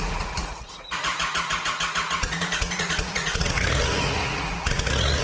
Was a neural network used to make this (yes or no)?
yes